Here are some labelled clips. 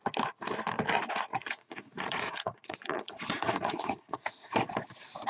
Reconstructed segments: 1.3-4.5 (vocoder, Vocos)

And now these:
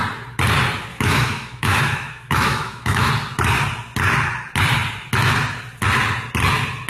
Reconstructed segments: 0.9-3.1 (autoencoder, DAC-VAE)